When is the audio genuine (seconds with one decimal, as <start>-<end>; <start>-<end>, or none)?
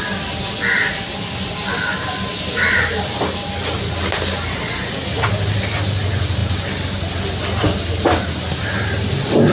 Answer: 0.0-9.5